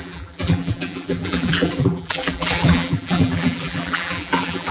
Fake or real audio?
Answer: fake